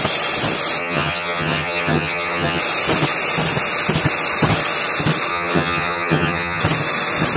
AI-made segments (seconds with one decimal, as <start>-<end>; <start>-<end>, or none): 0.8-2.6; 5.3-6.6